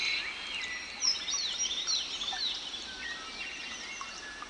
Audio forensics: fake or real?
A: real